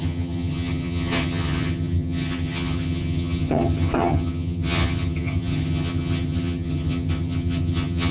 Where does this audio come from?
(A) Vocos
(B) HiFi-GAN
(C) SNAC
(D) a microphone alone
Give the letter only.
B